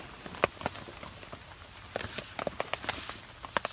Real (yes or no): yes